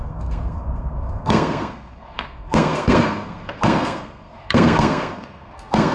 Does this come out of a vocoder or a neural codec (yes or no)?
yes